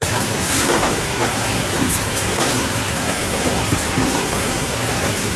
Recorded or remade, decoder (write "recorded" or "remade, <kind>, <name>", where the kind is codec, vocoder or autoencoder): remade, codec, SNAC